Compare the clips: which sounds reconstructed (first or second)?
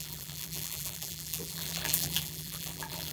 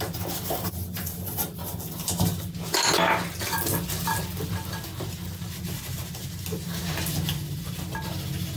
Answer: first